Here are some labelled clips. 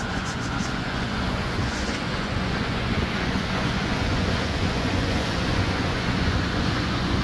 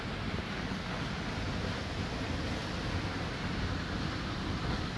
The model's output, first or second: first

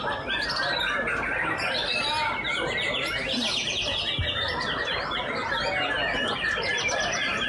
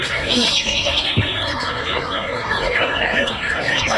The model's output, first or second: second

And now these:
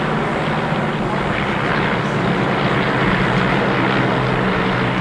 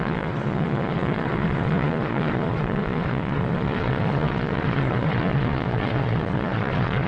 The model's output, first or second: second